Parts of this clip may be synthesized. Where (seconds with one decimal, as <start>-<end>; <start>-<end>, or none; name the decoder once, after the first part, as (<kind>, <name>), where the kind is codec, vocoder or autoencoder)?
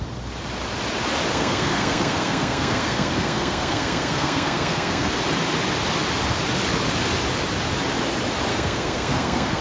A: 1.3-5.1 (codec, SNAC); 8.5-9.6